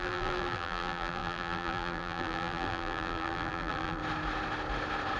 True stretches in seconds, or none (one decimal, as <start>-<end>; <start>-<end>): 4.0-5.2